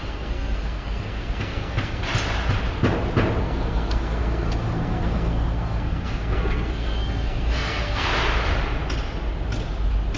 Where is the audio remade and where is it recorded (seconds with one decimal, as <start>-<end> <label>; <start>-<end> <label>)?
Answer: 0.0-2.0 remade; 2.0-3.4 recorded; 3.4-8.1 remade; 8.1-10.2 recorded